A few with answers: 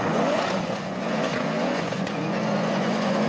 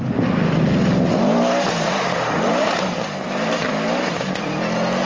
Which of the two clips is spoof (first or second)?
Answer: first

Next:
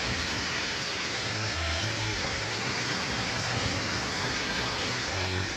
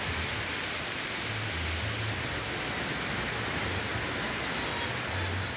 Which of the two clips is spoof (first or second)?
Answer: first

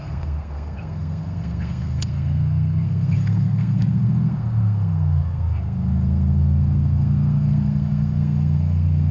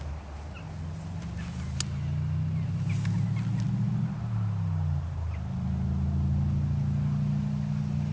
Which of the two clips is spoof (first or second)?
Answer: first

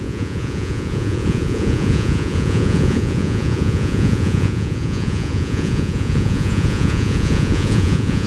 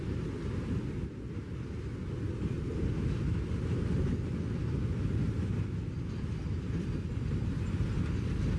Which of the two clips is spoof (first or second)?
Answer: first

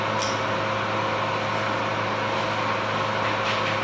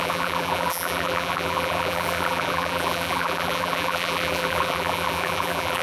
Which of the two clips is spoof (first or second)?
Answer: second